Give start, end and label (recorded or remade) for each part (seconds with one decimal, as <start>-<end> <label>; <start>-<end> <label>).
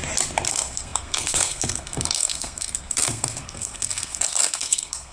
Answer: 0.0-0.5 recorded; 0.5-5.1 remade